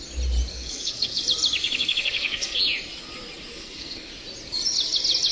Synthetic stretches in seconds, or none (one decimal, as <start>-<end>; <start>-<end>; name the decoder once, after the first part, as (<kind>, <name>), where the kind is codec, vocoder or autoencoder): 0.5-1.2 (codec, SNAC); 1.6-2.6; 3.5-4.1